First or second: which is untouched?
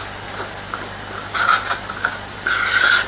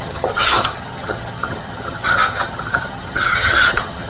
first